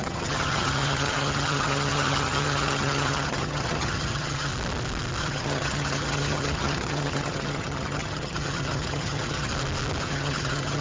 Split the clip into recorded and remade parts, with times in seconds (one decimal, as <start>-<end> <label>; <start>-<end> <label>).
0.0-4.5 remade; 4.5-5.2 recorded; 5.2-9.5 remade; 9.5-10.0 recorded; 10.0-10.8 remade